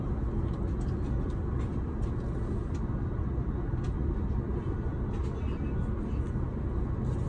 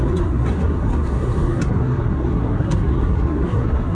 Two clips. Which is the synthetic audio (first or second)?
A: second